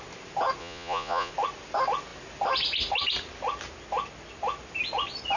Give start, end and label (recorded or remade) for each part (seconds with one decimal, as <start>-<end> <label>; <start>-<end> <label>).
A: 0.0-0.6 recorded; 0.6-1.3 remade; 1.3-5.4 recorded

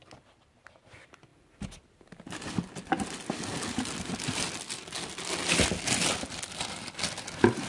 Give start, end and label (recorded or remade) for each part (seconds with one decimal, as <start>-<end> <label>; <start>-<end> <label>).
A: 0.0-7.7 recorded

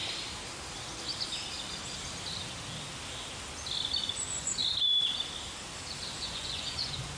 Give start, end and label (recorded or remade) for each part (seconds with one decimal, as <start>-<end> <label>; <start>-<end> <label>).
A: 0.0-4.1 recorded; 4.1-4.6 remade; 4.6-6.2 recorded; 6.2-7.2 remade